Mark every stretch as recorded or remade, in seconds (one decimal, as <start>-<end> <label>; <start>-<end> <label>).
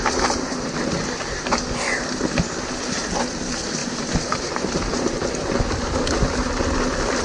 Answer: 0.0-7.2 recorded